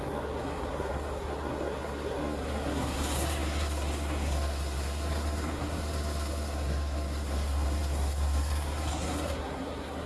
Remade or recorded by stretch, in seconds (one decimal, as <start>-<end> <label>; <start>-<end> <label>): 0.0-10.1 remade